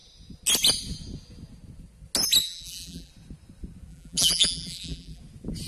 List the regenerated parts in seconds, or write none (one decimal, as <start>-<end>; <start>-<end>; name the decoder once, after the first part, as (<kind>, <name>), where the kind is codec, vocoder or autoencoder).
2.4-3.1 (vocoder, BigVGAN v2); 3.9-5.2